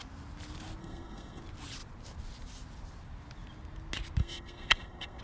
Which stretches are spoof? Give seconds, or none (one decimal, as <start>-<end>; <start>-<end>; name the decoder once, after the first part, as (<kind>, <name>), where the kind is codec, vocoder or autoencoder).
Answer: 0.8-1.4 (codec, SNAC); 4.2-5.2